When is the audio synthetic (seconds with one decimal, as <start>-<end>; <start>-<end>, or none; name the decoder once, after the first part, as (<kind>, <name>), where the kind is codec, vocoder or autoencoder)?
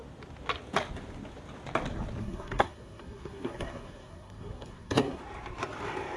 2.2-5.2 (codec, SNAC)